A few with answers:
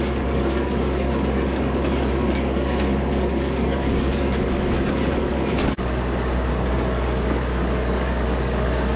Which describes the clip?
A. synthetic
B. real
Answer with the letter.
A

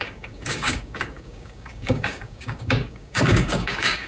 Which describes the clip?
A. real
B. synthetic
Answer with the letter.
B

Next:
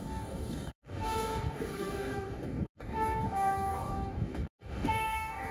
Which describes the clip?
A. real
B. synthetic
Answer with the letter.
B